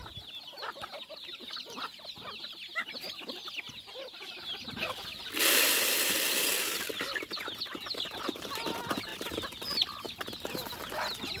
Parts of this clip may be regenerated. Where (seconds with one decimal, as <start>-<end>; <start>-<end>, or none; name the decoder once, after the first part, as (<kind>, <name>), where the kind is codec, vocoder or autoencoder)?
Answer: none